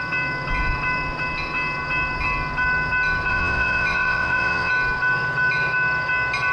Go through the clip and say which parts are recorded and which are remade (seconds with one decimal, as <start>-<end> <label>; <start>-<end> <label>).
0.0-3.3 recorded; 3.3-4.7 remade; 4.7-6.5 recorded